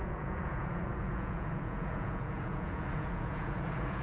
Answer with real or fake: fake